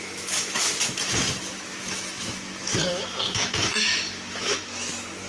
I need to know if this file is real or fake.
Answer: fake